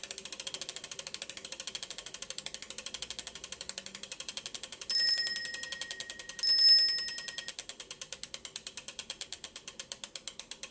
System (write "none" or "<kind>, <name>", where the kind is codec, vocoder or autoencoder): none